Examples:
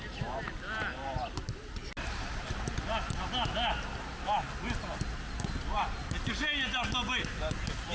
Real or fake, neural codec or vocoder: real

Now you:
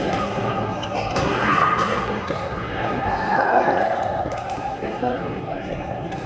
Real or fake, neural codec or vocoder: fake, codec, SNAC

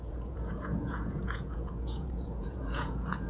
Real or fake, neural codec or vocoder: fake, vocoder, Vocos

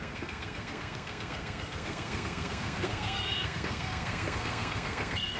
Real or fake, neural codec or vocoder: fake, codec, SNAC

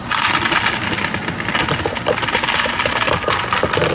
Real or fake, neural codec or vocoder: real